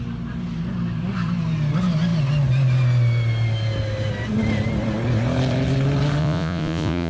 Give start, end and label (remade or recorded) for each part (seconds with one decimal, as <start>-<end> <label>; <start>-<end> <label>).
0.0-6.2 recorded; 6.2-7.1 remade